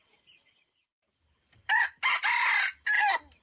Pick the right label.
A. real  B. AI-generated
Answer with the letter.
A